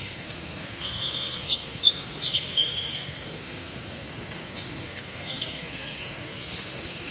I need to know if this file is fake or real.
fake